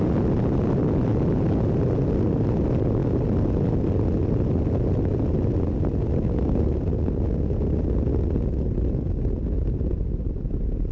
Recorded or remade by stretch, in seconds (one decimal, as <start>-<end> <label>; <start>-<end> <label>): 0.0-10.9 recorded